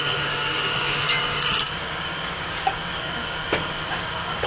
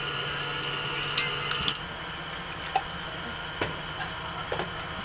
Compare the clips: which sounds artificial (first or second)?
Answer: first